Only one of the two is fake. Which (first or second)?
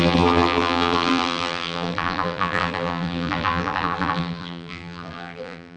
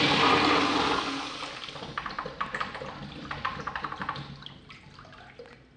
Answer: first